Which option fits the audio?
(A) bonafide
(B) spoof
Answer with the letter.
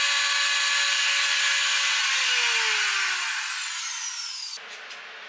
A